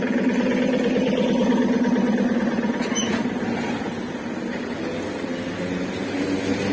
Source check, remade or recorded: recorded